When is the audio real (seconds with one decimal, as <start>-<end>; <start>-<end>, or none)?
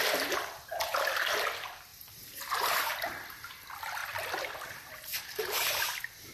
0.0-1.9; 3.0-6.3